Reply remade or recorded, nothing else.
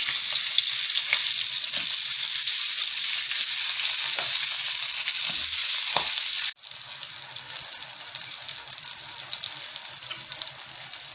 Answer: recorded